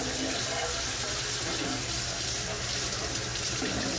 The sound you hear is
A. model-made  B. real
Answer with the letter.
B